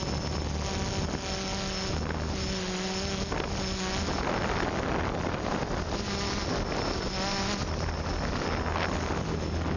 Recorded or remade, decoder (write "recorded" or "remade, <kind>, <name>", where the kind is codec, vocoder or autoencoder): recorded